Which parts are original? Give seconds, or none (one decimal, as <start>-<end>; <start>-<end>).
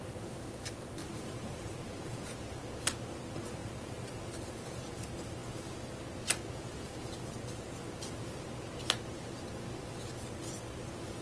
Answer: 0.0-1.0; 1.9-3.6; 4.8-11.2